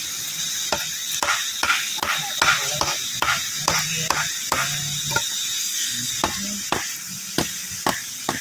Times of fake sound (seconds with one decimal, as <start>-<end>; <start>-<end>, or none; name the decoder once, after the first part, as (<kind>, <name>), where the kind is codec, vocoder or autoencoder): 5.6-6.1 (codec, SNAC)